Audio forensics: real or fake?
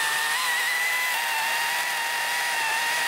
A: real